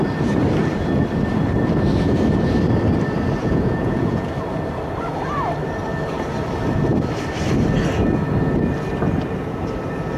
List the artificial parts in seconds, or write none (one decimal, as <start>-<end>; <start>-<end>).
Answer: 3.4-4.3